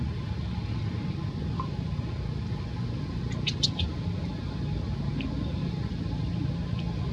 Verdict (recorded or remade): recorded